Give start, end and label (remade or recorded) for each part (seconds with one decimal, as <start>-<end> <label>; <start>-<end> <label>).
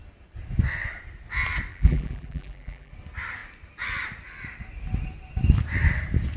0.0-1.7 recorded; 1.7-2.9 remade; 2.9-6.4 recorded